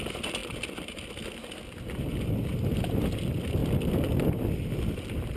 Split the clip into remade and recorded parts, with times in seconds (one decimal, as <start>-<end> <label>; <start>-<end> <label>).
0.0-0.4 recorded; 0.4-0.9 remade; 0.9-3.6 recorded; 3.6-5.4 remade

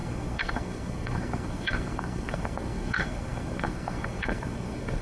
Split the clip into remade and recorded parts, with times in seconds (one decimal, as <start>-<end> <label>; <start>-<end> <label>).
0.0-5.0 remade